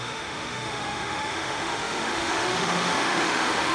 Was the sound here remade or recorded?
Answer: remade